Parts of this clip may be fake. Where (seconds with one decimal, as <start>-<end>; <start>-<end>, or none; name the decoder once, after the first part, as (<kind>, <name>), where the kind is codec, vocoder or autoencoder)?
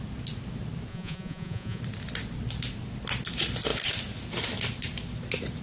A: 0.9-1.8 (vocoder, Vocos)